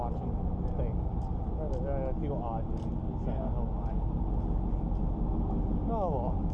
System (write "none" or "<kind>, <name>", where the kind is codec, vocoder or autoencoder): none